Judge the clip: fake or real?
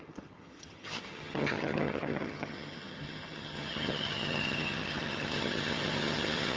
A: fake